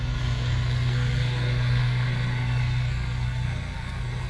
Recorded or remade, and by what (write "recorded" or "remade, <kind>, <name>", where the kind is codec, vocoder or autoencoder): remade, codec, SNAC